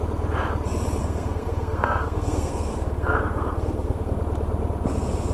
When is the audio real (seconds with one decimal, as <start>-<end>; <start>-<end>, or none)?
0.0-1.0; 4.2-5.3